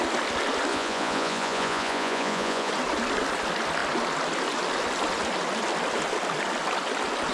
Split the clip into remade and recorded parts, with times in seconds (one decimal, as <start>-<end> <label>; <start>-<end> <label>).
0.0-0.7 recorded; 0.7-2.7 remade; 2.7-7.3 recorded